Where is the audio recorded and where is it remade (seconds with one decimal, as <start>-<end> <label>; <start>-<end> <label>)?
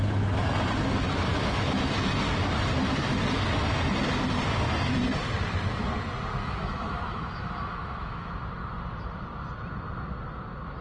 0.0-1.3 recorded; 1.3-1.9 remade; 1.9-6.4 recorded; 6.4-8.3 remade; 8.3-10.8 recorded